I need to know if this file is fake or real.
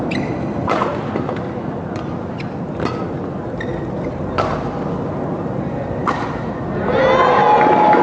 real